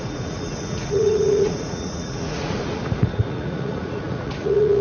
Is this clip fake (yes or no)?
yes